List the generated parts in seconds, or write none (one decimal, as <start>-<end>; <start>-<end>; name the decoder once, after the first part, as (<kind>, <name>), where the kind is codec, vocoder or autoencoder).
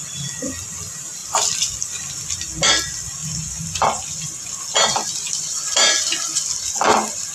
none